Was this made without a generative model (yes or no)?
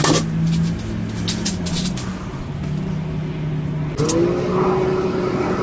yes